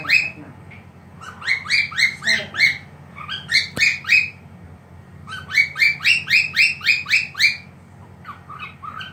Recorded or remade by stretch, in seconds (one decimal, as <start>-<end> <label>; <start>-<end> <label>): 0.0-9.1 recorded

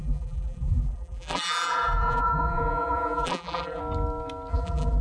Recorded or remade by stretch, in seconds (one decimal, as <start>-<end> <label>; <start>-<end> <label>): 0.0-3.8 remade; 3.8-4.5 recorded; 4.5-5.0 remade

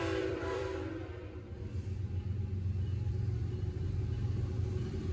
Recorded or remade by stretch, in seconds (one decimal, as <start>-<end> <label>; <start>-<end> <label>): 0.0-1.5 remade; 1.5-4.6 recorded; 4.6-5.1 remade